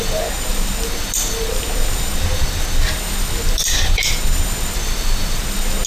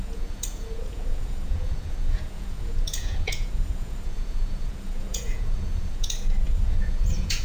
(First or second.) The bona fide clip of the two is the first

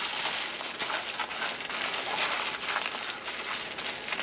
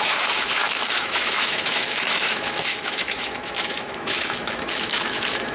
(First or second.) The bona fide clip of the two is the first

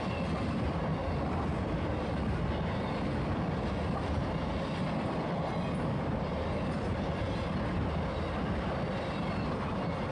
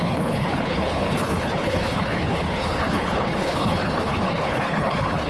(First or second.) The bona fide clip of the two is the first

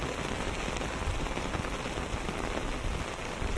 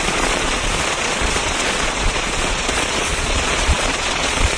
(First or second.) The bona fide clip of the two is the first